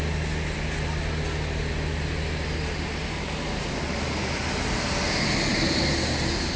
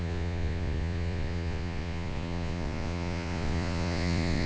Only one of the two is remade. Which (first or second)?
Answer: second